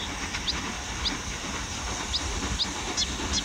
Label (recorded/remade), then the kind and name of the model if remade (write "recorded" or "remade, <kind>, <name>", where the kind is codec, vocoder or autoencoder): recorded